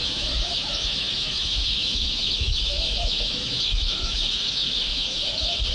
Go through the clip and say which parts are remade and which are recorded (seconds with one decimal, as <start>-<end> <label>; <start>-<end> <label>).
0.0-5.7 remade